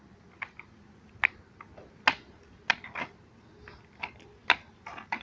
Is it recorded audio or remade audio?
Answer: recorded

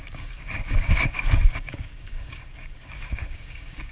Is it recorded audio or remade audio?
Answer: remade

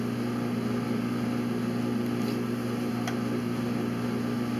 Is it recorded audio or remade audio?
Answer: recorded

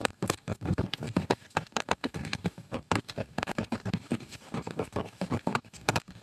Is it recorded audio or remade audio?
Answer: remade